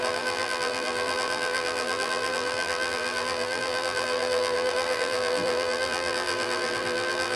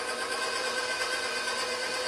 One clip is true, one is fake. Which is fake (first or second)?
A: first